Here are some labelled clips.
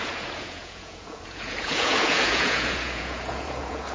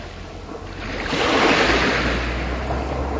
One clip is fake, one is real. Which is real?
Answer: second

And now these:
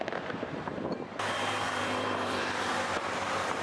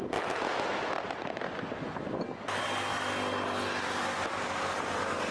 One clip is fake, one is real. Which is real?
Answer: second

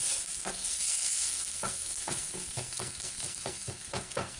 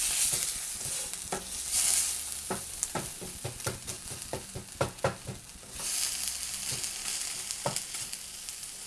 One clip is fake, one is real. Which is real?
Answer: second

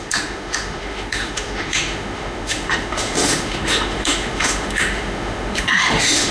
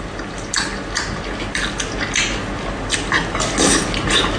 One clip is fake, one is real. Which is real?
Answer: second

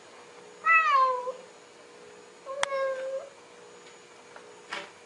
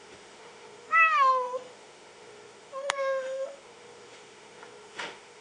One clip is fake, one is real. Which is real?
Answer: first